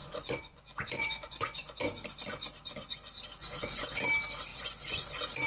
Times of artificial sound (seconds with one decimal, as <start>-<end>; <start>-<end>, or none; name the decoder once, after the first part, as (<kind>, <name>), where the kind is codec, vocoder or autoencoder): 0.0-1.8 (vocoder, Vocos); 3.4-4.0; 4.5-5.1